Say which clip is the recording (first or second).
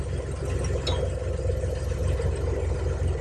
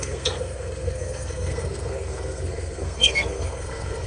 first